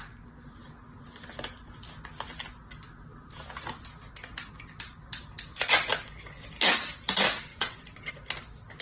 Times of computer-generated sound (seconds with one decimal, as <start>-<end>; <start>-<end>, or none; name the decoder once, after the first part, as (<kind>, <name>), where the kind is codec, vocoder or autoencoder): 7.5-8.1 (vocoder, WaveNeXt)